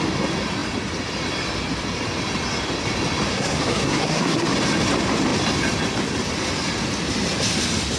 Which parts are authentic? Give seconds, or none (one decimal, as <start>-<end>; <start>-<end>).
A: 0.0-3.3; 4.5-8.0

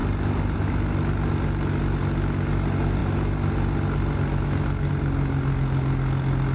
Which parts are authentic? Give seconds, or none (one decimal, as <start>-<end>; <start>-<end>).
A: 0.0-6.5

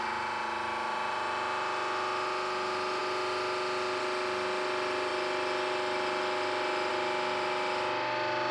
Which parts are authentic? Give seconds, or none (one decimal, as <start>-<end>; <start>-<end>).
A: 0.0-8.5

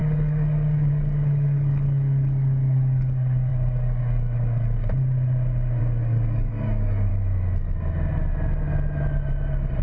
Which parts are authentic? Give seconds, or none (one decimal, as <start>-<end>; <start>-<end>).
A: 4.8-5.8; 7.1-9.8

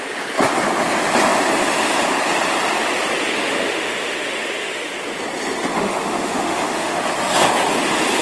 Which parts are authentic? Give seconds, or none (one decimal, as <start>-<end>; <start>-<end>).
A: 0.0-3.4; 4.8-5.7; 7.0-8.2

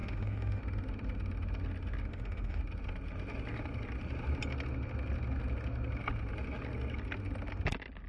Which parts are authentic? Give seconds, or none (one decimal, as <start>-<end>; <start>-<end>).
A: 0.6-2.1; 2.6-8.1